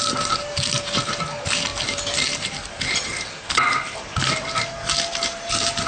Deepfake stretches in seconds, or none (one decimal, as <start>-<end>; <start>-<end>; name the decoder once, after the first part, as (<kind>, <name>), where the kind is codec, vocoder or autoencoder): none